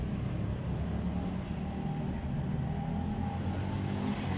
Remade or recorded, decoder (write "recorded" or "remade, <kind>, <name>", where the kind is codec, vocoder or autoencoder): recorded